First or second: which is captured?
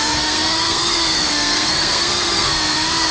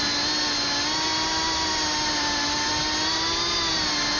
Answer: second